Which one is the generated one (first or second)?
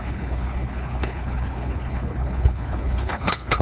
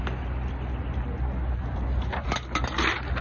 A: first